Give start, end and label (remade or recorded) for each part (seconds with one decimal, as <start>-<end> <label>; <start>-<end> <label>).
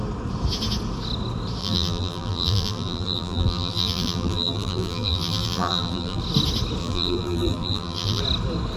0.0-1.6 recorded; 1.6-6.2 remade; 6.2-6.8 recorded; 6.8-8.2 remade; 8.2-8.8 recorded